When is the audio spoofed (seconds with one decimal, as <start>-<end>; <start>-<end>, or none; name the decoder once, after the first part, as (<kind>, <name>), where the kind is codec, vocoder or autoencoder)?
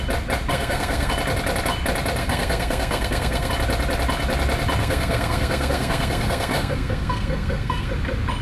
0.5-1.1 (codec, SNAC); 2.2-3.5; 4.8-7.9